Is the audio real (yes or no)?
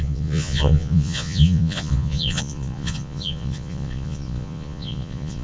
no